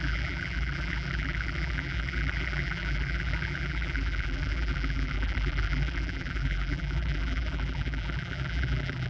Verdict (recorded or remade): remade